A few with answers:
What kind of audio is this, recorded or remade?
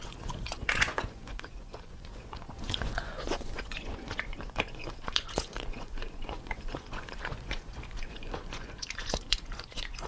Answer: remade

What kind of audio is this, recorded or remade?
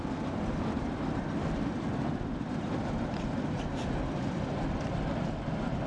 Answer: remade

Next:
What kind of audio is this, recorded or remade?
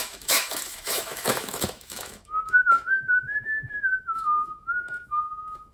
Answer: remade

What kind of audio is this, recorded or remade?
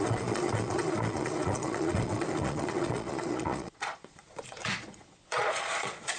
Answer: remade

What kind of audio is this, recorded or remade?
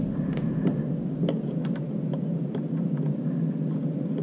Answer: recorded